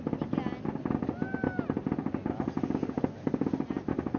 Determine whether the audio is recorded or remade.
recorded